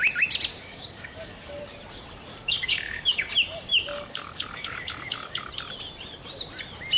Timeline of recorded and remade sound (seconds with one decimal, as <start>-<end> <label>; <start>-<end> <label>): 0.0-0.5 recorded; 0.5-1.6 remade; 1.6-2.3 recorded; 2.3-3.2 remade; 3.2-3.7 recorded; 3.7-5.5 remade; 5.5-7.0 recorded